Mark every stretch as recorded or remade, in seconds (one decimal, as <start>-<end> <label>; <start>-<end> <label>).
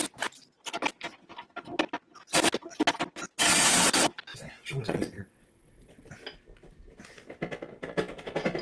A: 0.0-4.3 recorded; 4.3-6.1 remade; 6.1-8.6 recorded